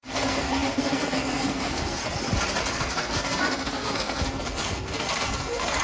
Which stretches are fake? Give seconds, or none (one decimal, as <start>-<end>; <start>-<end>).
0.0-2.0; 2.6-5.8